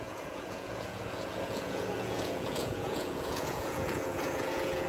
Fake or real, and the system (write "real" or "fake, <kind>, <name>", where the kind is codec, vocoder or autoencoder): fake, vocoder, Vocos